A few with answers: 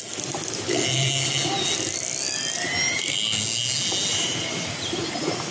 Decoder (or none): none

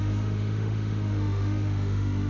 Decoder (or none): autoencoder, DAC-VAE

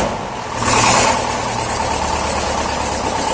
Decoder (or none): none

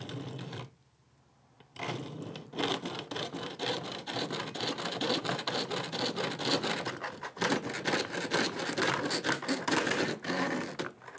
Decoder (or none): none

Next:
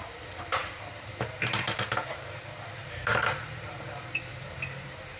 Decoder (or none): vocoder, BigVGAN v2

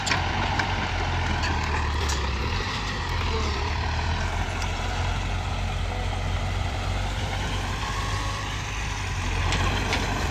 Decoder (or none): vocoder, BigVGAN v2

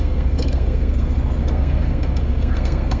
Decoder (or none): codec, SNAC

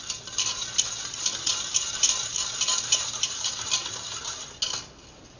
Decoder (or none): none